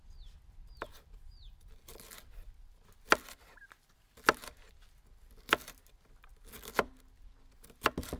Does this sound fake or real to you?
real